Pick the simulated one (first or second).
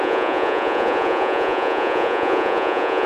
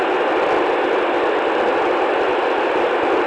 first